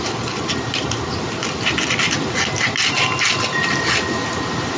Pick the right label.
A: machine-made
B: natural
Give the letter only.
B